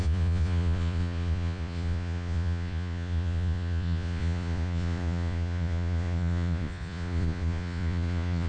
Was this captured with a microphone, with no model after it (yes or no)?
no